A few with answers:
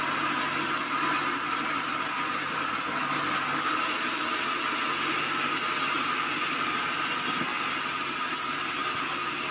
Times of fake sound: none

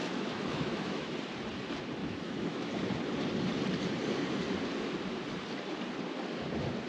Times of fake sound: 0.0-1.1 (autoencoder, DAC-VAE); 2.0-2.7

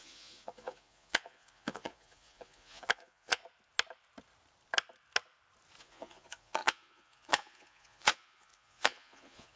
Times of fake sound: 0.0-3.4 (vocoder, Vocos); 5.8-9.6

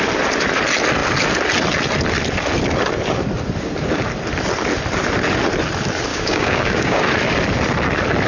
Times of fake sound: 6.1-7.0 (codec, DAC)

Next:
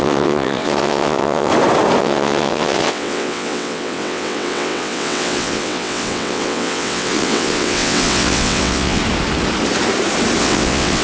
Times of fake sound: 0.0-1.5 (vocoder, WaveNeXt); 2.0-9.0; 10.4-11.0

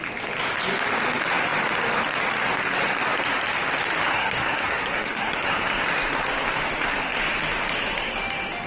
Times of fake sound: 4.1-5.7 (codec, SNAC)